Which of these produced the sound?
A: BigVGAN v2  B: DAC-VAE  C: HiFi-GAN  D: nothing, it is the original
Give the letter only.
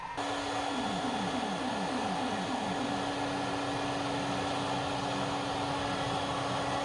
D